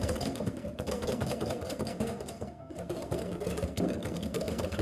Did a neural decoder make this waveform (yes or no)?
yes